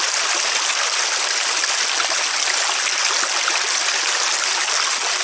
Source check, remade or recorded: recorded